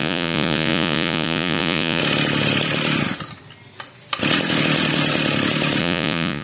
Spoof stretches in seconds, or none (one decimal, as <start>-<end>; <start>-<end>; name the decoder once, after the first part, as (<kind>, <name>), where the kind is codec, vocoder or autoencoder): 0.0-2.0 (vocoder, Vocos); 5.8-6.4